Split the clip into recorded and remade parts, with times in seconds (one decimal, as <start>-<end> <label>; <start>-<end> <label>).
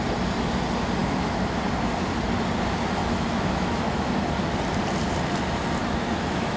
0.0-1.0 recorded; 1.0-1.6 remade; 1.6-3.0 recorded; 3.0-4.1 remade; 4.1-5.8 recorded; 5.8-6.6 remade